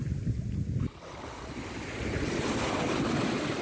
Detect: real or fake real